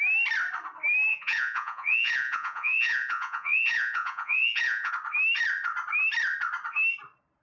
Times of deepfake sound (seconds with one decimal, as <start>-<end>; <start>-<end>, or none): 1.1-4.9